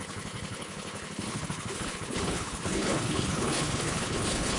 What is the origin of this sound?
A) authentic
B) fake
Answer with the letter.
B